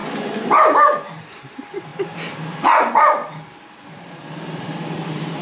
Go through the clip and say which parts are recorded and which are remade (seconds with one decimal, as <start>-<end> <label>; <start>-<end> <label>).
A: 0.0-1.3 recorded; 1.3-1.9 remade; 1.9-2.8 recorded; 2.8-3.2 remade; 3.2-5.4 recorded